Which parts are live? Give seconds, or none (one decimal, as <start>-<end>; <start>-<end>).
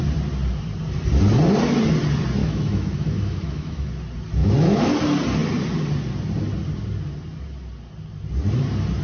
0.0-2.4; 3.9-4.4; 4.9-9.0